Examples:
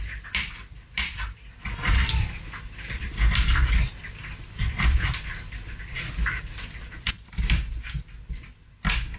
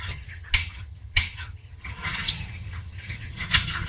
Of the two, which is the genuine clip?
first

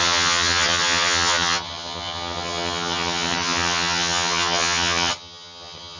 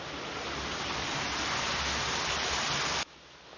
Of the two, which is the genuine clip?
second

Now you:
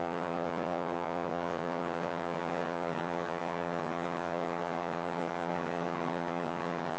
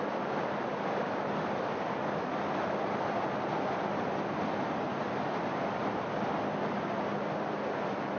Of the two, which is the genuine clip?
second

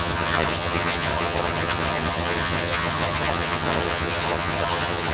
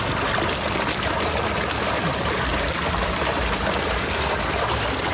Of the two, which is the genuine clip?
second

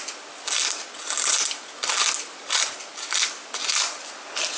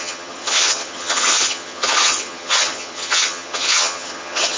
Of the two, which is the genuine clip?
first